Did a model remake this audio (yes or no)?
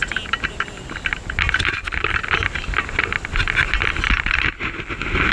no